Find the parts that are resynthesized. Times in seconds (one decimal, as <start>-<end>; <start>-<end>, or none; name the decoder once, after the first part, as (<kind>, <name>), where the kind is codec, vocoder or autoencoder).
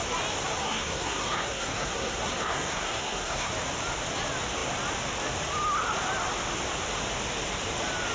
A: 0.6-3.5 (codec, SNAC)